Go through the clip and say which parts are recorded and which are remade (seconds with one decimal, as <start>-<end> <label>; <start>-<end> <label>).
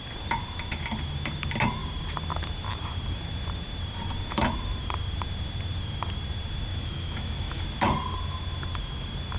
0.0-6.7 recorded; 6.7-7.6 remade; 7.6-9.4 recorded